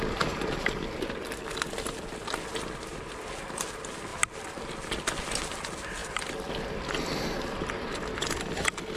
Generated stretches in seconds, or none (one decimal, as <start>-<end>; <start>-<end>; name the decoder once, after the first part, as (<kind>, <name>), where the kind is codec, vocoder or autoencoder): none